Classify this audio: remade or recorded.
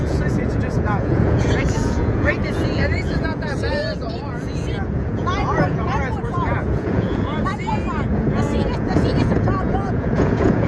remade